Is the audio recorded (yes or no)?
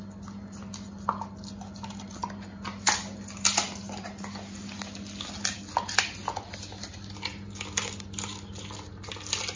yes